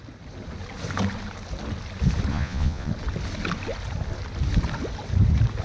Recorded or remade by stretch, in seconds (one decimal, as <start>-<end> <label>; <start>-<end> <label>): 0.0-2.3 recorded; 2.3-2.9 remade; 2.9-5.6 recorded